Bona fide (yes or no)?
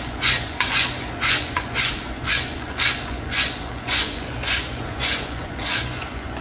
no